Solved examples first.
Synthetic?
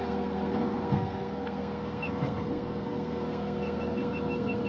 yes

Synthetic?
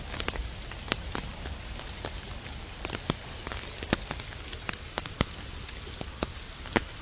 no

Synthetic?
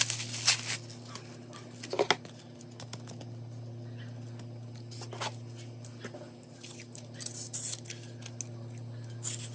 no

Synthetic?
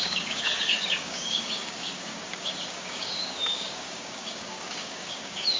yes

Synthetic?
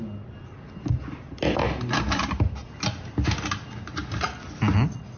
no